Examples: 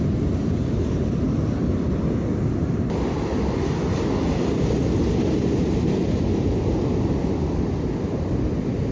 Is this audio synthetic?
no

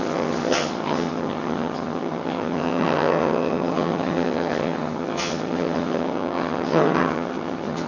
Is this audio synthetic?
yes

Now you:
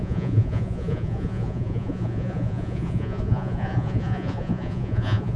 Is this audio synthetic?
yes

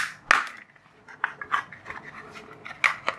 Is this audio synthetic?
no